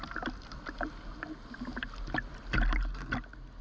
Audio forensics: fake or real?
real